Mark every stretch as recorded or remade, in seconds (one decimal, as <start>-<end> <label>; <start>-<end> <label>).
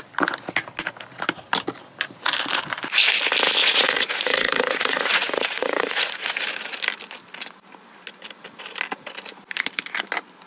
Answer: 0.0-3.6 recorded; 3.6-6.4 remade; 6.4-10.5 recorded